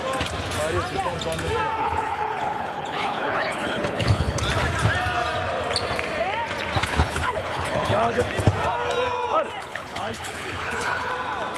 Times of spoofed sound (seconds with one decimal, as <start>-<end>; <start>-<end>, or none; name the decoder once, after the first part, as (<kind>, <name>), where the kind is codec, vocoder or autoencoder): 1.8-4.4 (codec, HILCodec); 6.8-8.2; 9.6-11.1

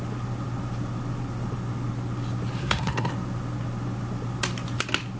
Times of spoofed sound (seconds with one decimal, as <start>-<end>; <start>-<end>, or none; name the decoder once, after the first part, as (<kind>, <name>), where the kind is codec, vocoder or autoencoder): 2.6-3.1 (codec, SNAC)

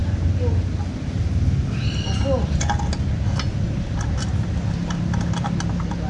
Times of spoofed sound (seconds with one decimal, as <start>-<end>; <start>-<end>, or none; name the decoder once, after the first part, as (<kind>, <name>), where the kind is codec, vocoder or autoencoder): none